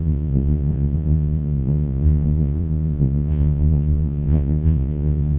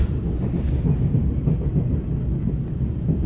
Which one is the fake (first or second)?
first